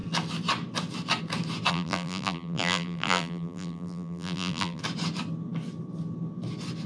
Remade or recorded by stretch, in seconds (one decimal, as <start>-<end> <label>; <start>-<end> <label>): 0.0-1.7 recorded; 1.7-4.8 remade; 4.8-6.9 recorded